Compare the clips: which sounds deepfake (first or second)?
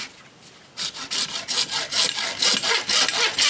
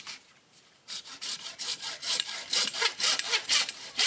second